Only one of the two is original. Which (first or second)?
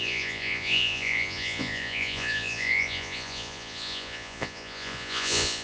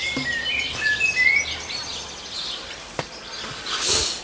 second